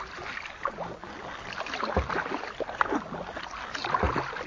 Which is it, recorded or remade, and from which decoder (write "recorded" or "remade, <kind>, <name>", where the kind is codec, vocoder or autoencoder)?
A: recorded